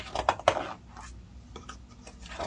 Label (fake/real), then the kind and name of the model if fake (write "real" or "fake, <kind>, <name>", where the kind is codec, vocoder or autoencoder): real